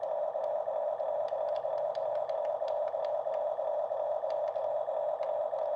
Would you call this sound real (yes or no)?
yes